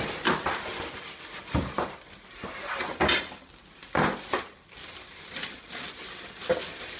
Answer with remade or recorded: recorded